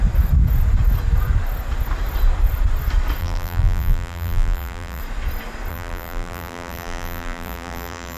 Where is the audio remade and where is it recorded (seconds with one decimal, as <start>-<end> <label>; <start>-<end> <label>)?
0.0-3.2 recorded; 3.2-5.0 remade; 5.0-5.7 recorded; 5.7-8.2 remade